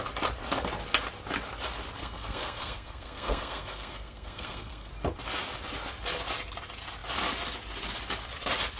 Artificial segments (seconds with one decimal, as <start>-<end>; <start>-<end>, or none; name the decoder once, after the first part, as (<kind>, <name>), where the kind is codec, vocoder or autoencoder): 2.0-4.9 (codec, SNAC)